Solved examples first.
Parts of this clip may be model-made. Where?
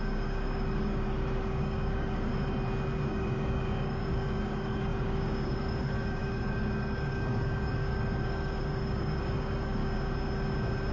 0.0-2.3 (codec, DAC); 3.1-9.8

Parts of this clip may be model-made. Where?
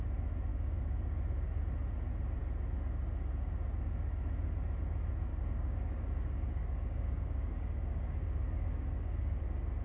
0.5-1.6 (codec, DAC); 5.3-9.4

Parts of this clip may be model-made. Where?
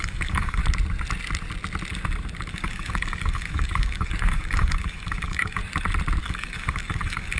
0.0-0.6 (codec, DAC); 2.5-5.6; 6.2-7.4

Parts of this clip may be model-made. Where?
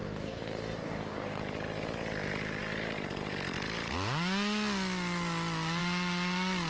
0.0-1.4 (codec, DAC)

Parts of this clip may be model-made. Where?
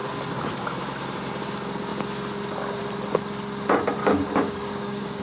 4.0-5.2 (codec, DAC)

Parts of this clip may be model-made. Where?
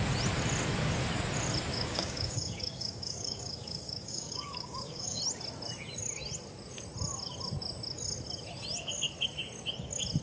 1.7-5.2 (codec, DAC)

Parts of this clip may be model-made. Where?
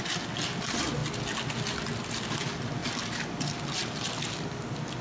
none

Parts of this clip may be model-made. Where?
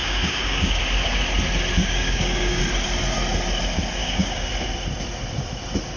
0.0-0.8 (codec, DAC); 1.8-2.6; 4.0-4.5